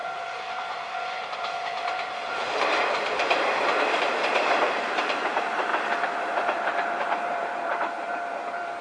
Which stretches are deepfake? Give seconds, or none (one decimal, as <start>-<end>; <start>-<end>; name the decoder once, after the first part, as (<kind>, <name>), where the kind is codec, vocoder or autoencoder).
0.0-8.8 (vocoder, BigVGAN v2)